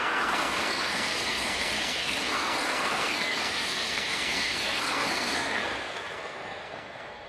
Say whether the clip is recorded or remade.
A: remade